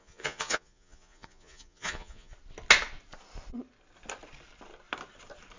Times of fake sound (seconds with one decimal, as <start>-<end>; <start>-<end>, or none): 0.0-2.3